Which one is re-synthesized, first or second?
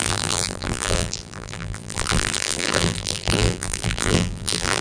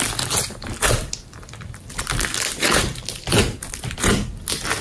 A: first